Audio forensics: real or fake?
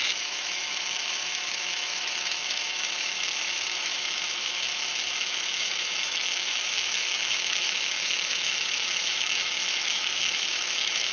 fake